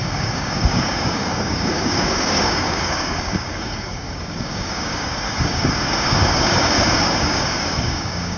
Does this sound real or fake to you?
fake